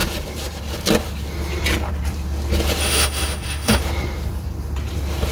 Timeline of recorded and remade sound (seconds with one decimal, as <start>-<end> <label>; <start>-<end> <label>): 0.0-2.8 recorded; 2.8-3.8 remade; 3.8-5.3 recorded